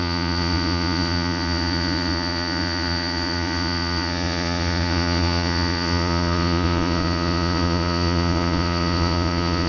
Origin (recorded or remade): remade